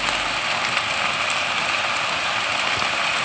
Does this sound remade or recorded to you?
recorded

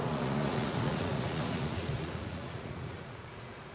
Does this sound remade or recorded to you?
remade